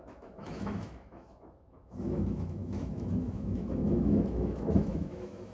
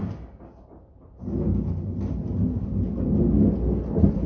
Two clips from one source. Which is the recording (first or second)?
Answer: second